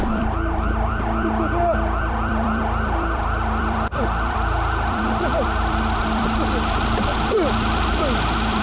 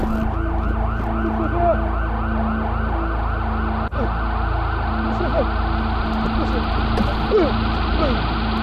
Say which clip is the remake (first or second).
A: first